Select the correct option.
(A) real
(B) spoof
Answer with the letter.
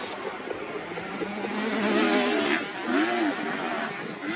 A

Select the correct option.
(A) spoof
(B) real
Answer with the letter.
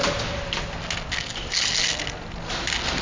B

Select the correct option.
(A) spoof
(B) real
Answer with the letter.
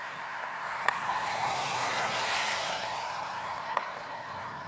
A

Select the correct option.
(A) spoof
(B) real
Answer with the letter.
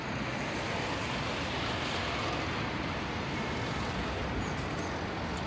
B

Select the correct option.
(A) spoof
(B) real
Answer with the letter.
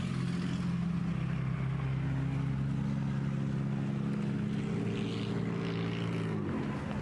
B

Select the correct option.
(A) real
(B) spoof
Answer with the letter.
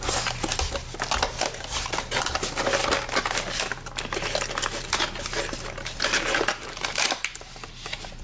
A